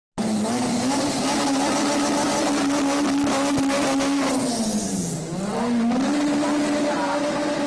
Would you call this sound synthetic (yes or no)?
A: no